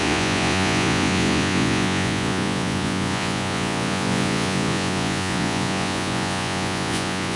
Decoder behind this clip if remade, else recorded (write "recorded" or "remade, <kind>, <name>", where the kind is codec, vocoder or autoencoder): remade, vocoder, Vocos